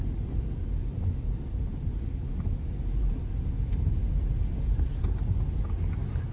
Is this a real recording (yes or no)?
yes